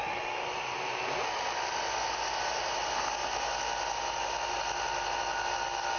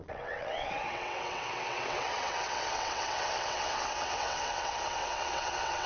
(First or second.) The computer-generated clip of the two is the second